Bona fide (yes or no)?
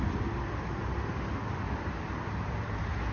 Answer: yes